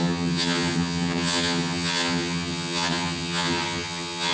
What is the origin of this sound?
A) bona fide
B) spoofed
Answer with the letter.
B